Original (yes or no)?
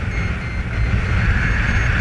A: yes